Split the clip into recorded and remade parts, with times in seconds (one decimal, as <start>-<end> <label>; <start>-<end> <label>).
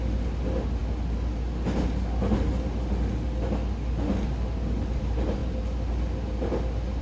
0.0-7.0 recorded